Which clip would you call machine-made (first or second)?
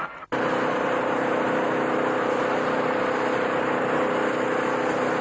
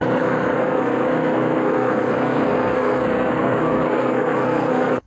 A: second